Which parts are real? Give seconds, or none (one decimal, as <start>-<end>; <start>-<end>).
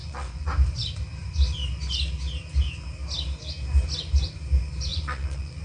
0.5-4.9